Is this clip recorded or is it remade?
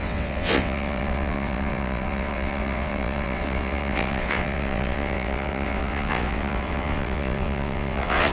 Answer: remade